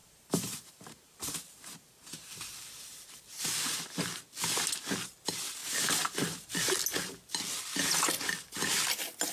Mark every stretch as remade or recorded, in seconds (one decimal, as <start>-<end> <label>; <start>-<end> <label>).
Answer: 0.0-3.4 remade; 3.4-5.6 recorded; 5.6-6.6 remade; 6.6-9.3 recorded